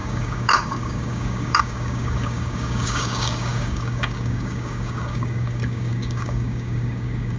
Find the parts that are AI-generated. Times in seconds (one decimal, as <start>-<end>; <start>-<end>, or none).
0.0-7.4